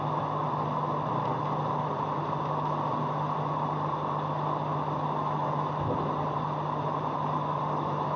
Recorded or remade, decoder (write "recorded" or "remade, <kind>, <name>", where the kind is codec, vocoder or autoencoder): recorded